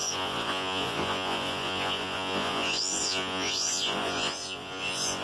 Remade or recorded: remade